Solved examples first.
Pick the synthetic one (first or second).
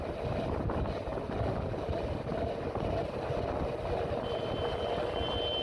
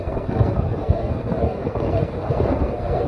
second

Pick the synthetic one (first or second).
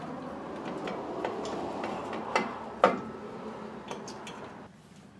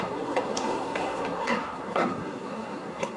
second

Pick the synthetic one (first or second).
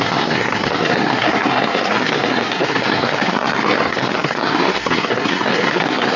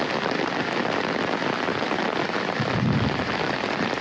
first